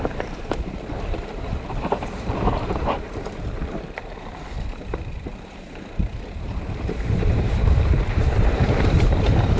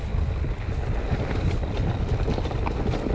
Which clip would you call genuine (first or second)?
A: second